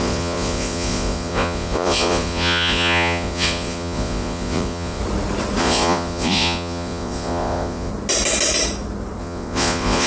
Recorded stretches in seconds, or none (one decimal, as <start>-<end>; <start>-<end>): 5.0-5.6; 7.9-9.2